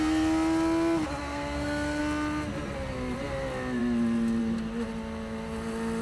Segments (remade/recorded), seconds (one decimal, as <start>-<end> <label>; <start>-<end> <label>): 0.0-1.2 recorded; 1.2-2.0 remade; 2.0-6.0 recorded